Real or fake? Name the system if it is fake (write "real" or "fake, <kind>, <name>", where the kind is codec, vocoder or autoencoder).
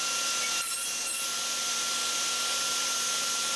real